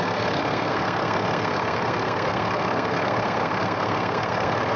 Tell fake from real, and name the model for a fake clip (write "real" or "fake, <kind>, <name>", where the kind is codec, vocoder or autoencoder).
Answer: fake, codec, SNAC